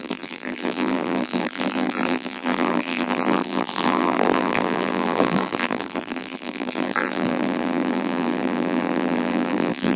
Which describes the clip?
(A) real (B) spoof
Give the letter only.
B